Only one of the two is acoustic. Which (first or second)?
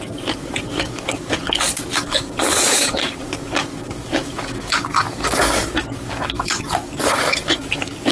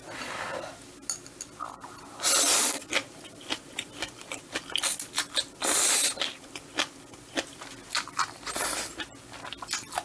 second